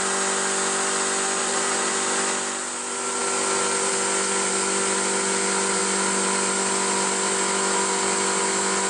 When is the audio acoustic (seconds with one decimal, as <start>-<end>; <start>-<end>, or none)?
0.0-1.4; 1.9-8.9